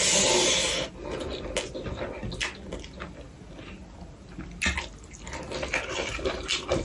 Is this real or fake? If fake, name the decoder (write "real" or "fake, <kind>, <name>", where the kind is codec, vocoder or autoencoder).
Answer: real